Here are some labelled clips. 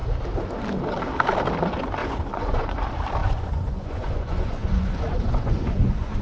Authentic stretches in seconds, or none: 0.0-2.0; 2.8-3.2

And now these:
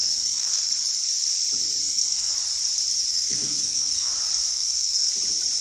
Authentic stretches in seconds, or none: 0.7-1.8; 2.3-3.1; 4.1-4.5; 5.1-5.6

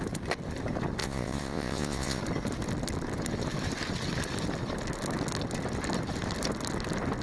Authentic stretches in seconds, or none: 0.0-1.0; 2.2-7.2

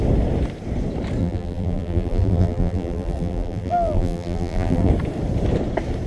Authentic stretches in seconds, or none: 0.0-1.2; 4.9-6.1

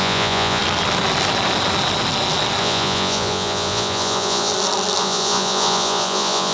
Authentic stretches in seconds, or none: 0.6-2.6; 4.5-5.0